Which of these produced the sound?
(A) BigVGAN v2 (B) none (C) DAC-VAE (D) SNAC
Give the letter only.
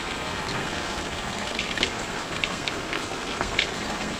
D